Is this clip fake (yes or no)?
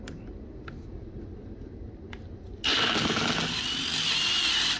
no